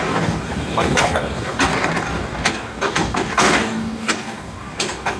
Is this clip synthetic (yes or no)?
yes